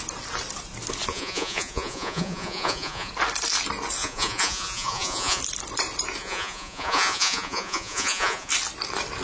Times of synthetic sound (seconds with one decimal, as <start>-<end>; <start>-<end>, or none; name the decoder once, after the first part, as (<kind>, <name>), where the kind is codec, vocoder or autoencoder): 1.1-3.1 (vocoder, Vocos); 4.0-5.4; 6.2-8.5